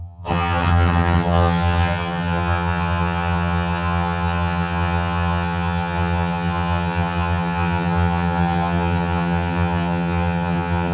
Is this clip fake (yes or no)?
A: yes